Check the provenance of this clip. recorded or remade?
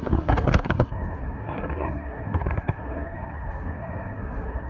remade